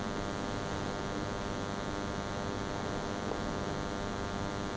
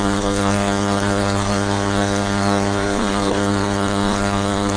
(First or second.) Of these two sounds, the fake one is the second